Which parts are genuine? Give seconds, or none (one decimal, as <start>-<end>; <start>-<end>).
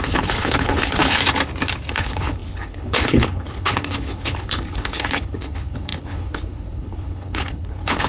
1.2-1.9